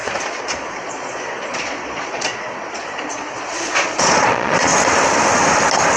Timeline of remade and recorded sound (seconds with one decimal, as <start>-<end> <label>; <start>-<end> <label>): 0.0-4.7 remade; 4.7-6.0 recorded